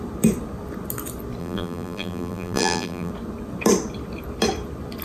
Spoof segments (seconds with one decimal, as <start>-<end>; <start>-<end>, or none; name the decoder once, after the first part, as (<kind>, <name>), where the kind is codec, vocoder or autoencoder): 1.4-3.1 (vocoder, BigVGAN v2)